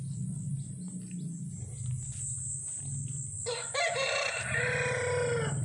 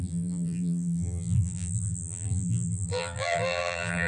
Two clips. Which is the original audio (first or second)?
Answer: first